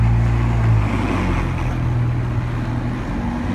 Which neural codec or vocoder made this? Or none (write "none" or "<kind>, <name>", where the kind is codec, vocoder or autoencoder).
none